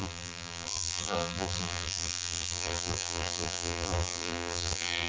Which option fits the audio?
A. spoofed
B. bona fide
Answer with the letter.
A